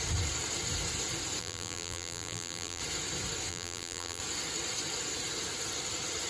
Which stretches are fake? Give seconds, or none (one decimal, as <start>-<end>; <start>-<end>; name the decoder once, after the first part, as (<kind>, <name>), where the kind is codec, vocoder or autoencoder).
1.4-2.8 (vocoder, BigVGAN v2); 3.5-4.2